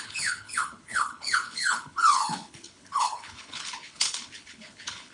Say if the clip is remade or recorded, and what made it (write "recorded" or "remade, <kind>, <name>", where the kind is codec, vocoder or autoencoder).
remade, codec, HILCodec